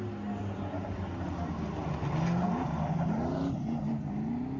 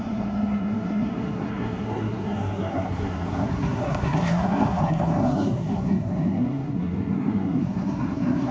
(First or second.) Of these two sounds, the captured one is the first